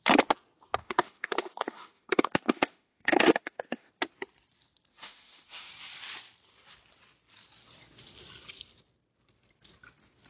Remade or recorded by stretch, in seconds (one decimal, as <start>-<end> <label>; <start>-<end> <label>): 0.0-0.8 recorded; 0.8-3.9 remade; 3.9-4.9 recorded; 4.9-5.7 remade; 5.7-10.3 recorded